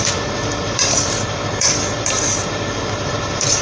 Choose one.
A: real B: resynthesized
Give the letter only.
B